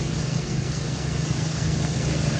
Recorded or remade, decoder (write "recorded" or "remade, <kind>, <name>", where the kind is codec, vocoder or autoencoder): remade, codec, SNAC